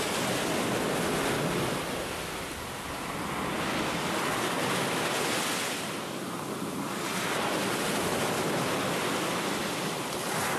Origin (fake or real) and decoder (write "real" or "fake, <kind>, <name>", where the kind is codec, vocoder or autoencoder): real